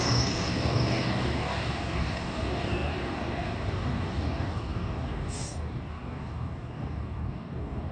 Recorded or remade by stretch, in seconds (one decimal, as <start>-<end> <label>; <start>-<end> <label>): 0.0-7.9 remade